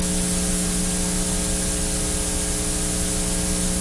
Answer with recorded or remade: recorded